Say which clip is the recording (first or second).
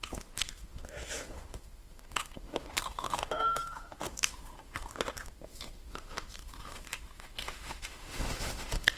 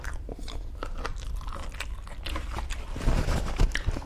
second